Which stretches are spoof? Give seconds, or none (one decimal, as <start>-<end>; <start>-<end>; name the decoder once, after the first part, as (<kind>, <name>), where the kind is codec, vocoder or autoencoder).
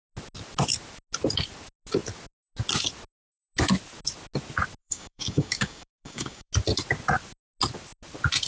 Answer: 4.8-6.5 (codec, DAC)